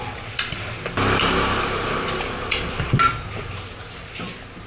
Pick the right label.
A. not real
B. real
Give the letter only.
B